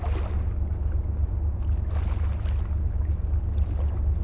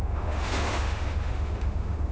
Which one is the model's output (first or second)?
second